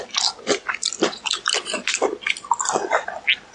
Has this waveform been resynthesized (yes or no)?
no